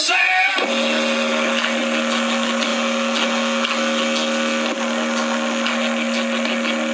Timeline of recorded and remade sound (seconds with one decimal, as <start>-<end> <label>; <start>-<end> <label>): 0.0-6.9 recorded